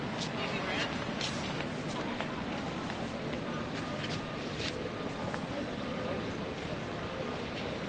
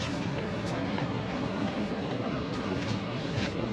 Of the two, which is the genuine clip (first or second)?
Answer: first